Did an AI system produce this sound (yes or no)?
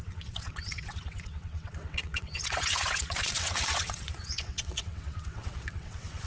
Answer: yes